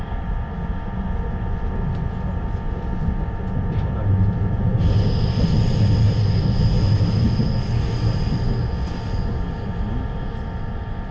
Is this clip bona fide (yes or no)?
yes